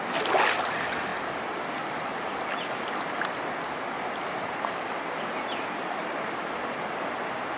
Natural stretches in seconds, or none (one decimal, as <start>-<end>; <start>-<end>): 0.0-7.6